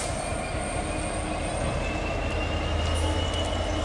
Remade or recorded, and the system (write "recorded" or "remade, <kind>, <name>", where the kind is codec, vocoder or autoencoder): recorded